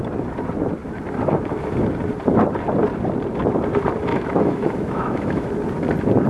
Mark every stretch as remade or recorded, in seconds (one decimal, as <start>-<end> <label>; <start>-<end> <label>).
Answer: 0.0-4.1 recorded; 4.1-5.5 remade; 5.5-6.3 recorded